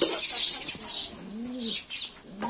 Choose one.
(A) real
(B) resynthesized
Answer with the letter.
A